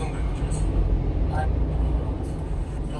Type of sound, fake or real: real